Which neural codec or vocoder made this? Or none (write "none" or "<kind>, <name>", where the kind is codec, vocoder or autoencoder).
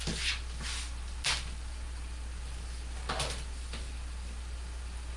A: none